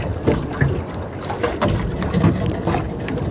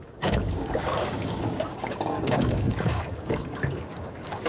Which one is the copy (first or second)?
second